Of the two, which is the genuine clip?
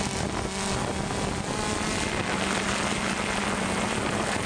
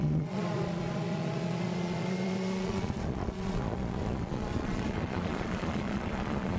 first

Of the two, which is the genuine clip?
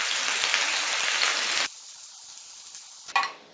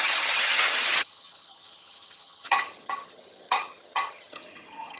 first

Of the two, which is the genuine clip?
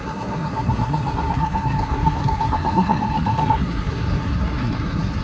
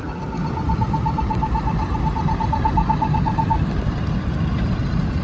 second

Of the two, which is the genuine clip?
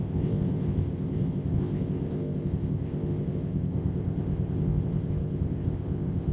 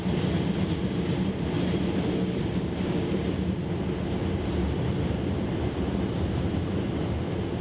second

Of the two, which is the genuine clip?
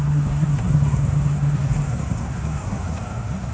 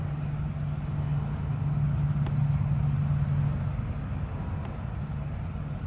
second